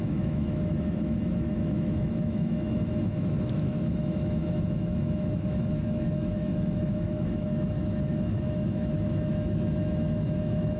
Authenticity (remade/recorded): remade